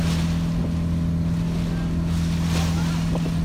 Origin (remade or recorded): recorded